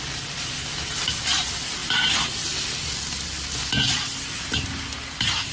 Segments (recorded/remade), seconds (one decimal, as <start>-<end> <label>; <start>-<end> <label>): 0.0-5.5 recorded